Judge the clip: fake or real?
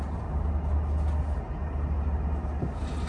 real